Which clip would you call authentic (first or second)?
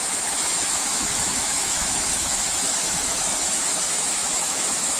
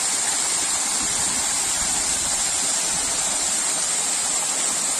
second